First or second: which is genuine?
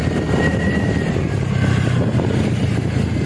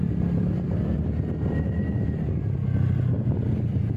second